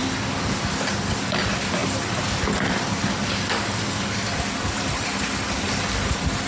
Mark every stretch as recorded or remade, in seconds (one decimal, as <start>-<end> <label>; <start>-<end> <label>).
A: 0.0-6.5 recorded